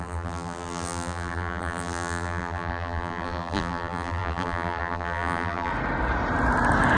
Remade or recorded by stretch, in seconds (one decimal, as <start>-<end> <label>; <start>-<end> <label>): 0.0-5.7 remade; 5.7-7.0 recorded